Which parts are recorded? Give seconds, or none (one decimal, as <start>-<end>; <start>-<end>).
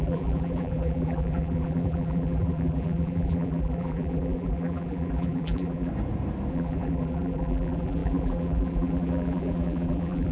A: 5.9-6.5